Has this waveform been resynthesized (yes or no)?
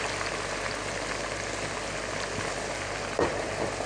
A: no